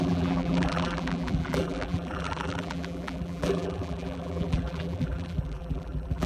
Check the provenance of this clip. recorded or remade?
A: remade